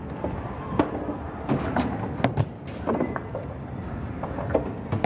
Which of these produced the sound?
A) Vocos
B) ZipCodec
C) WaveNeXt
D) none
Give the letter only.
D